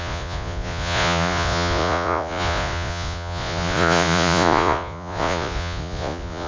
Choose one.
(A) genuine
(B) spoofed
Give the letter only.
B